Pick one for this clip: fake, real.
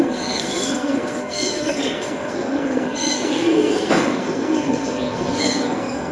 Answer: fake